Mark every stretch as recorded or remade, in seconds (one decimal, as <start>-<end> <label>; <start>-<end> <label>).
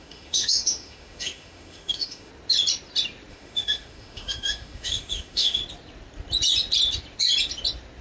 0.0-2.3 remade; 2.3-3.3 recorded; 3.3-5.6 remade; 5.6-8.0 recorded